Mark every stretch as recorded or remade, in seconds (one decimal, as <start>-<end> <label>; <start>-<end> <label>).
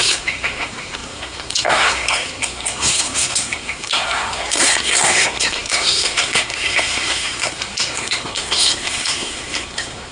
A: 0.0-10.1 remade